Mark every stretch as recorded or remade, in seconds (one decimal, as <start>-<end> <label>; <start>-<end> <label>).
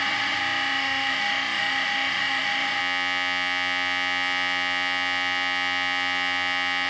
0.0-2.8 remade; 2.8-6.9 recorded